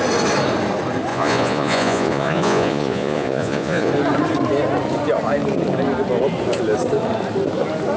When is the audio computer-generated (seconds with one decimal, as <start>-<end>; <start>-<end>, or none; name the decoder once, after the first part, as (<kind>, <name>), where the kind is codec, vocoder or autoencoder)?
1.1-3.9 (vocoder, Vocos)